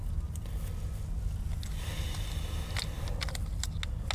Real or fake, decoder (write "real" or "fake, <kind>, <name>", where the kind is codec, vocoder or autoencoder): real